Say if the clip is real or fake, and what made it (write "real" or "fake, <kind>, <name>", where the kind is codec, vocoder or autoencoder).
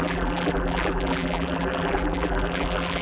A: fake, vocoder, BigVGAN v2